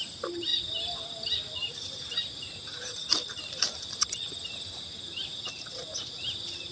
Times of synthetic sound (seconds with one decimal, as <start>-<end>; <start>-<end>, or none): none